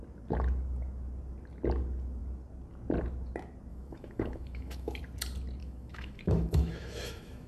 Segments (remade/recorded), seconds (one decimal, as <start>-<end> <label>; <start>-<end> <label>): 0.0-3.7 recorded; 3.7-5.0 remade; 5.0-5.6 recorded; 5.6-7.5 remade